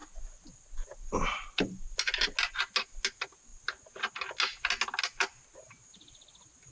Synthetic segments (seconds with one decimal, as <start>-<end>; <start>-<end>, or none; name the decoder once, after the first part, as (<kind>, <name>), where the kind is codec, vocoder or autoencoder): none